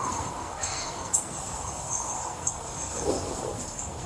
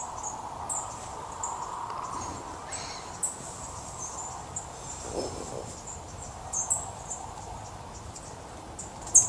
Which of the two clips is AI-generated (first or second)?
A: first